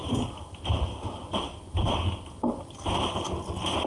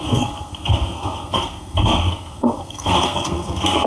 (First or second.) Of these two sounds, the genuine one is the first